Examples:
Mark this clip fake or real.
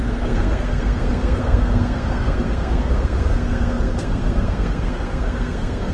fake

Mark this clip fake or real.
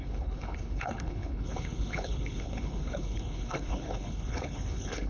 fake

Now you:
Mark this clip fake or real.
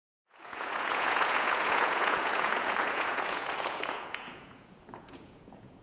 fake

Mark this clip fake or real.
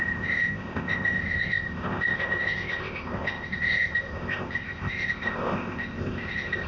fake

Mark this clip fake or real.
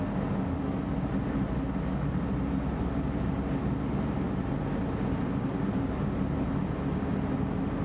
real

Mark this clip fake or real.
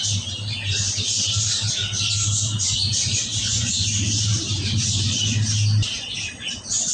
real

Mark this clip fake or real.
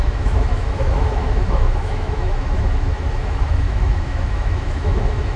fake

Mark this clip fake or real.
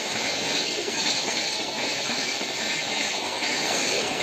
fake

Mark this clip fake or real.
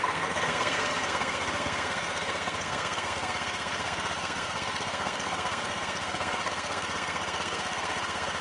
fake